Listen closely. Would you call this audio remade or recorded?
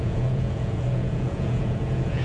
remade